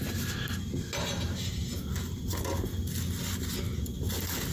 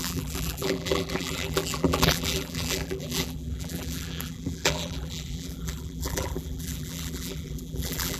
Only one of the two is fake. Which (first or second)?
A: second